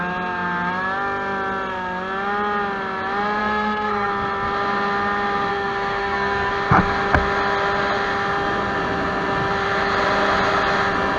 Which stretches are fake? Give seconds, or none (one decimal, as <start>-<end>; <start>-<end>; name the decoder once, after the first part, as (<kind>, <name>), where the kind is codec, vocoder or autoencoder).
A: 3.4-4.1 (codec, SNAC); 5.5-6.5